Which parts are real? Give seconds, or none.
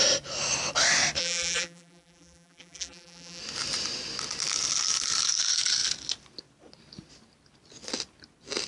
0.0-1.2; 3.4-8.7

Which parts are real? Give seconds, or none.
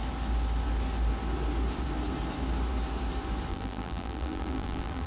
0.0-3.5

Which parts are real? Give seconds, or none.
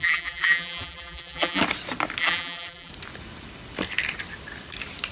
1.6-2.2; 2.9-5.1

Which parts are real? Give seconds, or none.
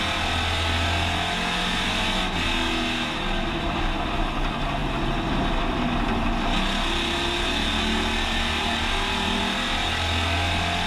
0.0-10.9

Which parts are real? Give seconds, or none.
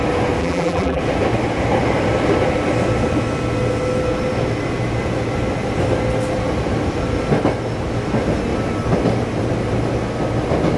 0.0-0.4; 1.0-10.8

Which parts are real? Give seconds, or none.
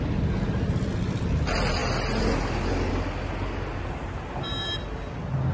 0.0-5.5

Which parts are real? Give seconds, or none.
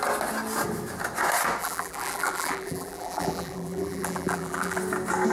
0.0-1.6; 4.8-5.3